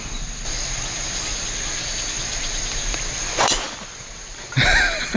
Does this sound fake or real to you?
real